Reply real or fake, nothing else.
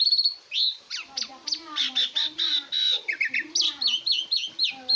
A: real